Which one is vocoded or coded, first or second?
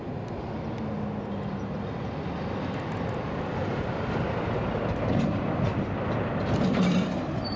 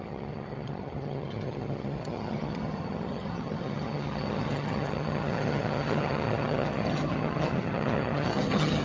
second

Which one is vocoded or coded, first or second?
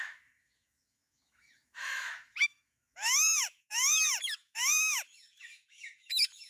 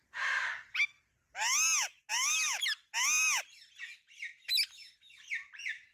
first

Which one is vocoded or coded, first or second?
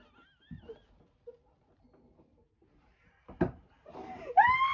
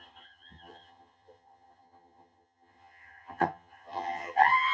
second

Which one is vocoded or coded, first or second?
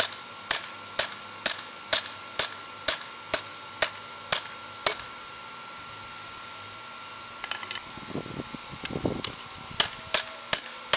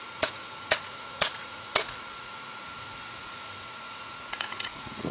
second